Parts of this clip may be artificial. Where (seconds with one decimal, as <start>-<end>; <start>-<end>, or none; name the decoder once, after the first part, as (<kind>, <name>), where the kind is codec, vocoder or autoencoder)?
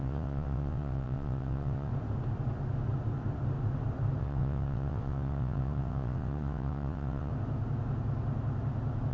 0.0-1.9 (vocoder, WaveNeXt); 4.2-7.3